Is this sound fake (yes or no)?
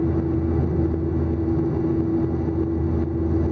no